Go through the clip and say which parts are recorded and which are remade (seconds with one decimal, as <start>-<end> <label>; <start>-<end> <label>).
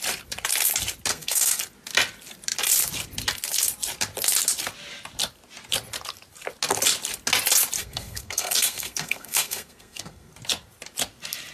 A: 0.0-1.1 recorded; 1.1-1.6 remade; 1.6-7.8 recorded; 7.8-10.3 remade; 10.3-11.5 recorded